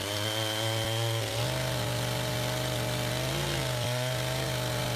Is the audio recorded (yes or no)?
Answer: yes